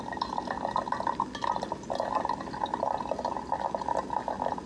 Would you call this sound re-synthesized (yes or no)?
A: no